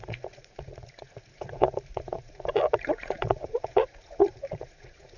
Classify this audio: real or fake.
fake